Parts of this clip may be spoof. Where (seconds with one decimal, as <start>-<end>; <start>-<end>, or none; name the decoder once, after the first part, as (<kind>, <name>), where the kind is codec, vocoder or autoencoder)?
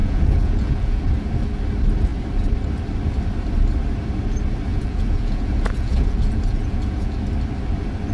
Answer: 0.0-1.0 (vocoder, Vocos); 4.7-7.2